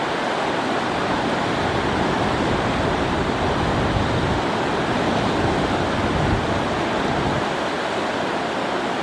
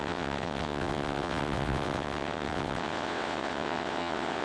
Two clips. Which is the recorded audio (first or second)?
first